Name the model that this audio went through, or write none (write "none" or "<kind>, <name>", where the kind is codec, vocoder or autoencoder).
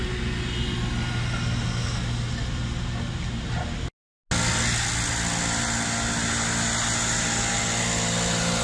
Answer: none